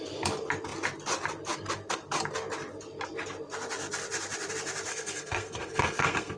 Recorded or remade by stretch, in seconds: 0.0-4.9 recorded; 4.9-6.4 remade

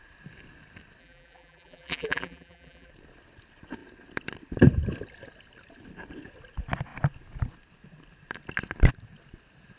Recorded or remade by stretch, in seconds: 0.0-1.0 recorded; 1.0-2.9 remade; 2.9-9.8 recorded

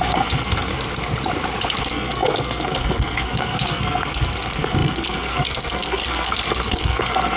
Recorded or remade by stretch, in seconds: 0.0-0.7 remade; 0.7-1.8 recorded; 1.8-7.4 remade

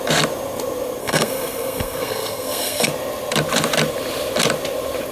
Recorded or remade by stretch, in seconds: 0.0-1.0 recorded; 1.0-2.9 remade; 2.9-5.1 recorded

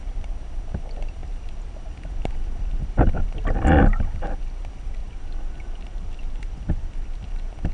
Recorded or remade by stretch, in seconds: 0.0-1.2 recorded; 1.2-3.1 remade; 3.1-5.0 recorded; 5.0-7.7 remade

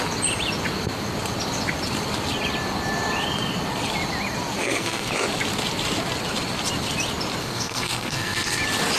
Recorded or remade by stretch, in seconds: 0.0-4.6 recorded; 4.6-5.1 remade; 5.1-7.4 recorded; 7.4-8.6 remade; 8.6-9.0 recorded